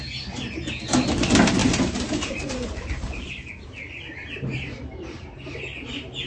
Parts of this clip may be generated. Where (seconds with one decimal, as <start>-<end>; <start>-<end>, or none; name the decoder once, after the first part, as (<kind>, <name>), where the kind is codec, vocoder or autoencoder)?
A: 1.6-5.4 (vocoder, BigVGAN v2)